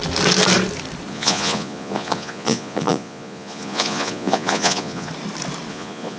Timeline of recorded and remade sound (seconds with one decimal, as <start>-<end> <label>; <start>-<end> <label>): 0.0-1.1 recorded; 1.1-5.1 remade; 5.1-5.7 recorded; 5.7-6.2 remade